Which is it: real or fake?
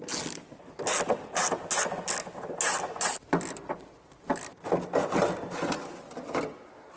real